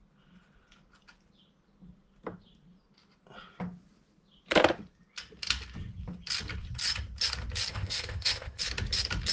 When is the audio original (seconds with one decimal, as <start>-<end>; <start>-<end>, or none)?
0.0-7.7; 8.6-9.3